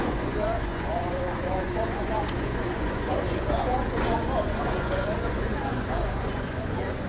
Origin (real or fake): fake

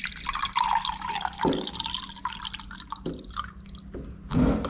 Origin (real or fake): real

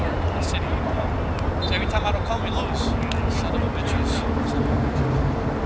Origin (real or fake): real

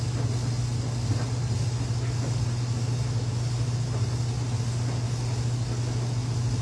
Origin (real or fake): real